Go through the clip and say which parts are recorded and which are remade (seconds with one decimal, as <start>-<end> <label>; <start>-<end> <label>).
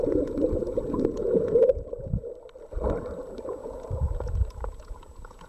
0.0-1.7 remade; 1.7-3.5 recorded; 3.5-5.5 remade